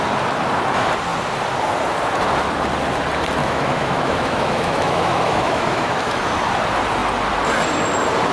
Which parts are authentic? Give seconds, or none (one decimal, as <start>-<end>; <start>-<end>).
0.0-3.4; 6.2-8.3